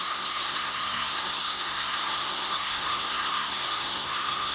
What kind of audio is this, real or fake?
fake